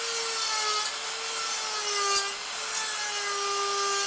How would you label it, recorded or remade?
recorded